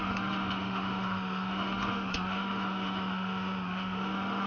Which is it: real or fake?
fake